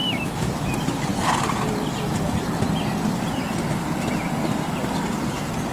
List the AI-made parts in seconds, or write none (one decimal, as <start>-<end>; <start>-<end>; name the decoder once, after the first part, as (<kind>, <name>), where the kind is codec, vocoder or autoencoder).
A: 0.0-0.5 (autoencoder, DAC-VAE)